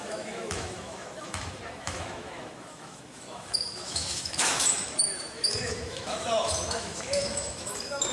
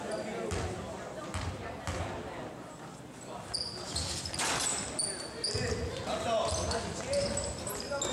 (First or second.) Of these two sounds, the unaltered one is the second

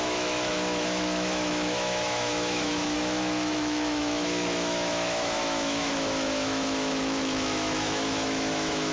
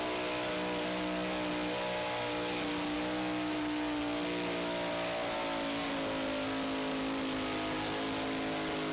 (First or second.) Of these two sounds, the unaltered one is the second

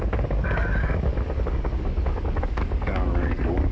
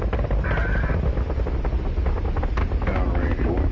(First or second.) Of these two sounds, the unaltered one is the second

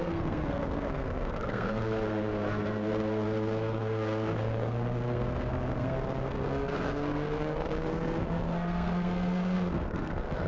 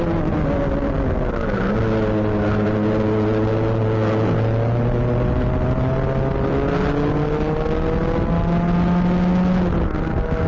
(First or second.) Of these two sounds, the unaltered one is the second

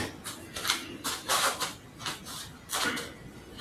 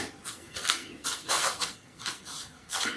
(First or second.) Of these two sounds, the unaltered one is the first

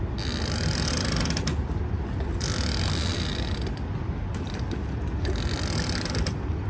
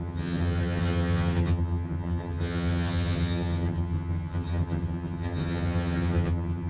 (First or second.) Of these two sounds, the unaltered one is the first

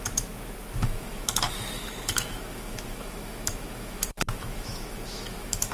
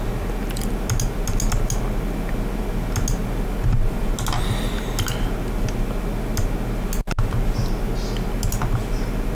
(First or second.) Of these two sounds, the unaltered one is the second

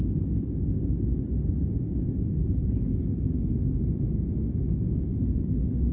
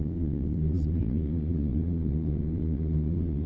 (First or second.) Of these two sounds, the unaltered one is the first